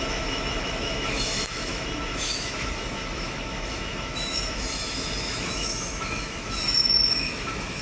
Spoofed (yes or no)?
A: yes